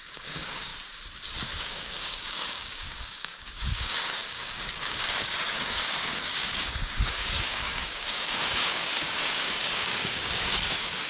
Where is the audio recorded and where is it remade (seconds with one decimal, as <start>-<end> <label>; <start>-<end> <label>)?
0.0-0.7 remade; 0.7-1.6 recorded; 1.6-11.1 remade